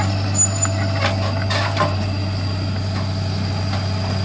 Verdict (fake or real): real